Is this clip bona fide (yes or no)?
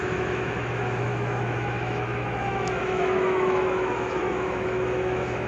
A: no